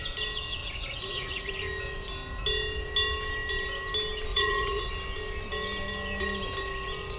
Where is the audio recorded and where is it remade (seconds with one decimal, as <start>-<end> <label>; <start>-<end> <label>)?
0.0-0.6 recorded; 0.6-1.5 remade; 1.5-4.3 recorded; 4.3-4.9 remade; 4.9-7.2 recorded